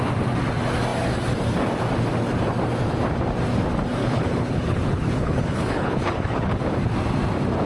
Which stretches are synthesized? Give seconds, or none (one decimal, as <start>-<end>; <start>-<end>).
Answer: 4.0-6.5